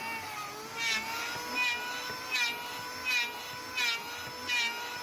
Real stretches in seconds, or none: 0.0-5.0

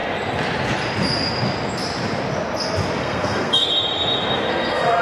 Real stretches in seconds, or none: 0.0-3.0; 3.7-4.5

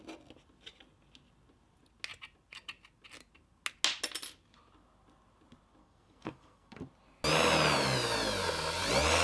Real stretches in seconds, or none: 0.0-5.8; 6.8-9.2

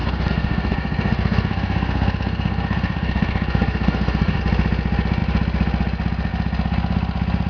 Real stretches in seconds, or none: 4.4-7.5

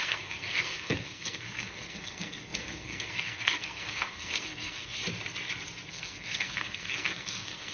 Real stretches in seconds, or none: 5.0-5.9

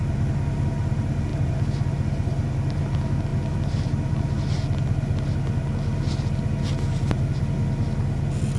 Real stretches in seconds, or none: 0.0-8.6